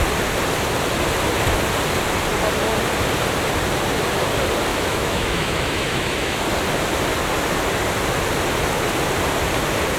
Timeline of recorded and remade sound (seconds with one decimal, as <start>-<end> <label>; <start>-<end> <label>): 0.0-4.7 recorded; 4.7-6.5 remade; 6.5-10.0 recorded